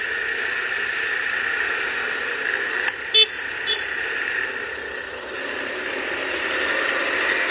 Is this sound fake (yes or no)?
no